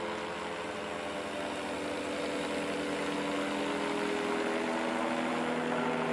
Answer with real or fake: real